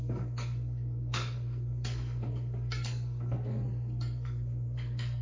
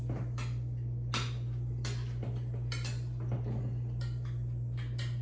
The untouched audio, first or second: second